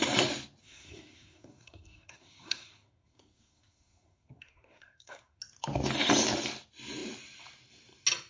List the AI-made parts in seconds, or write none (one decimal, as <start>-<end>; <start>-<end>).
0.6-5.4